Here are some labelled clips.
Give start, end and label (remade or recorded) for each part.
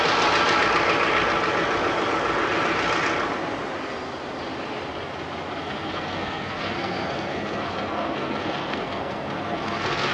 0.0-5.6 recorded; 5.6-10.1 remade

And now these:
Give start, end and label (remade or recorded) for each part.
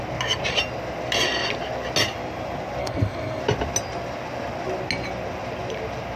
0.0-2.8 recorded; 2.8-3.4 remade; 3.4-6.2 recorded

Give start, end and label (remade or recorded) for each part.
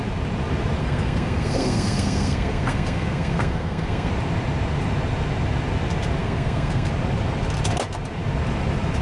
0.0-0.8 recorded; 0.8-4.1 remade; 4.1-6.2 recorded; 6.2-6.9 remade; 6.9-9.0 recorded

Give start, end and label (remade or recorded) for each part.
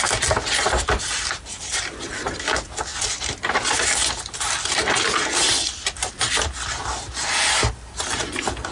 0.0-8.7 recorded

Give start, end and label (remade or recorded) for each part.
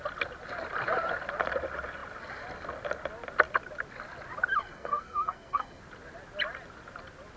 0.0-4.6 recorded; 4.6-5.8 remade; 5.8-7.4 recorded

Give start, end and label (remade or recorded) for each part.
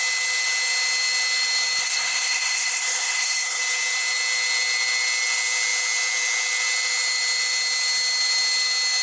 0.0-1.8 recorded; 1.8-3.6 remade; 3.6-9.0 recorded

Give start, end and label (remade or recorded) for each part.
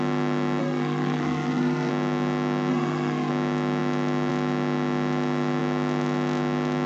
0.0-0.6 recorded; 0.6-1.9 remade; 1.9-2.7 recorded; 2.7-3.3 remade; 3.3-6.9 recorded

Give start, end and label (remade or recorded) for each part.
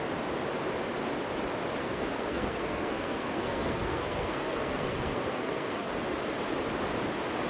0.0-1.8 recorded; 1.8-5.9 remade; 5.9-7.5 recorded